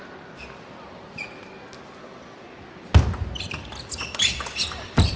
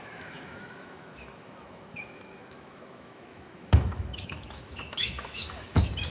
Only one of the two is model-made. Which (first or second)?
second